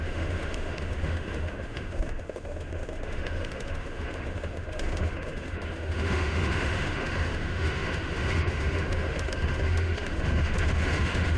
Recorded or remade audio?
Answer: remade